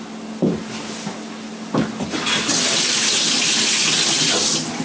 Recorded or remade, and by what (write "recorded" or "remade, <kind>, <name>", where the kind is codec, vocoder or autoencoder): recorded